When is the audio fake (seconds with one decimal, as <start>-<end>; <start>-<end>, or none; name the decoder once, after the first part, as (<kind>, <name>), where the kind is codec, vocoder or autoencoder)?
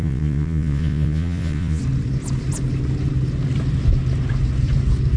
0.0-1.8 (vocoder, Vocos)